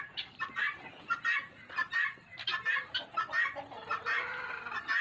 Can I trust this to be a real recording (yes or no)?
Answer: yes